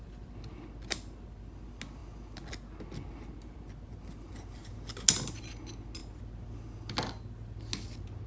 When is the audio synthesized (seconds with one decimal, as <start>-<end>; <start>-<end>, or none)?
none